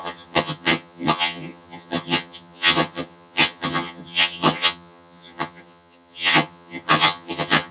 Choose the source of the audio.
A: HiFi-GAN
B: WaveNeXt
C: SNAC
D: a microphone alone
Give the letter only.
A